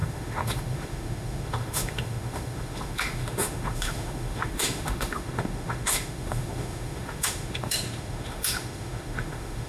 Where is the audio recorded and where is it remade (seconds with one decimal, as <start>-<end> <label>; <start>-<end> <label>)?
0.0-9.7 remade